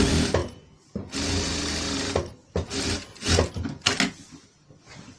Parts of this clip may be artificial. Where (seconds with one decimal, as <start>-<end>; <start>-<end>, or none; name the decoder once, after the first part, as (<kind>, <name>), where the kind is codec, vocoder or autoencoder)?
none